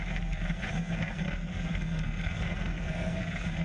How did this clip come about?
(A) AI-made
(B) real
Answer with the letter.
A